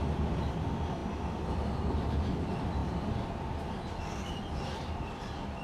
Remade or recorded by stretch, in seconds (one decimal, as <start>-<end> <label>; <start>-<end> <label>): 0.0-5.6 recorded